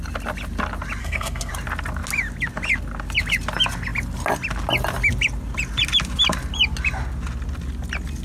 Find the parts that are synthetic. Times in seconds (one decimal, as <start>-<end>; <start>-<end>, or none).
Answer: 1.0-1.5